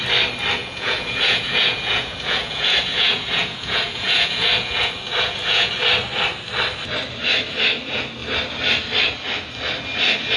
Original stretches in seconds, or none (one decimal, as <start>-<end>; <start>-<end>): 0.0-0.6; 5.7-10.4